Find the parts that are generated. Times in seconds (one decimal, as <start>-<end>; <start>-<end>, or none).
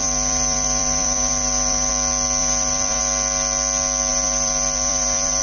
0.0-1.9; 2.4-3.0; 4.1-5.4